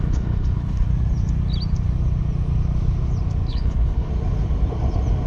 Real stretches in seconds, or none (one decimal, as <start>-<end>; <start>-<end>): 0.9-3.5; 4.1-5.3